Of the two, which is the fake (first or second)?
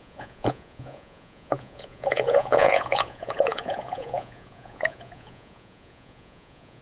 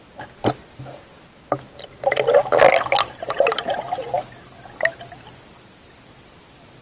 first